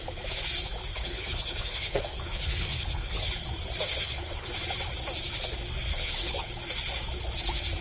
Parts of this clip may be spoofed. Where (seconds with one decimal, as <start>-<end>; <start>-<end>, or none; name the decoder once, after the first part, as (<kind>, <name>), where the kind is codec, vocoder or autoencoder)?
0.9-3.3 (codec, HILCodec); 3.9-4.6; 5.9-6.5